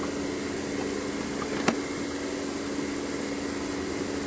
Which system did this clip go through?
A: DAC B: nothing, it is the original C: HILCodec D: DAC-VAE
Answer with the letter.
B